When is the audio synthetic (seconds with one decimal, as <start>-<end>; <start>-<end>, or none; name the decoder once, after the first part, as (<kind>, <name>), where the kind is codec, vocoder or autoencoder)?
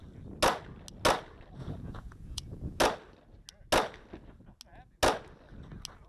1.6-2.8 (vocoder, Vocos)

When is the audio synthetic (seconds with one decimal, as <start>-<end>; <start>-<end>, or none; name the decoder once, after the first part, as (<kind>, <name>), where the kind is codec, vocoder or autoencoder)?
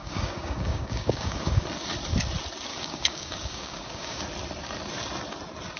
0.0-1.6 (codec, DAC); 2.7-4.2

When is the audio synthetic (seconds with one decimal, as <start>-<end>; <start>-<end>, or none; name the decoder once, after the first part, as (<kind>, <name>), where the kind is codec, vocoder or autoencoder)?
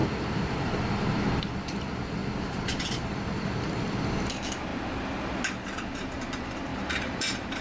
0.0-1.3 (vocoder, BigVGAN v2); 2.2-3.8; 6.7-7.6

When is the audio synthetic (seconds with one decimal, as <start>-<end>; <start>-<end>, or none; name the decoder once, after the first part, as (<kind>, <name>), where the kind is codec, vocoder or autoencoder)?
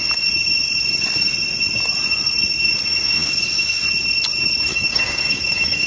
4.7-5.9 (codec, DAC)